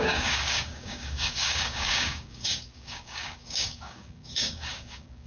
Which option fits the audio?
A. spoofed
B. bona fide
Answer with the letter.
A